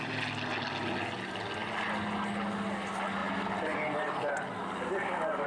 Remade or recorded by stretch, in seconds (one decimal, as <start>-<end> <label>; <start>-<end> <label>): 0.0-5.5 recorded